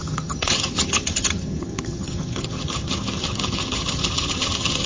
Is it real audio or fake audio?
fake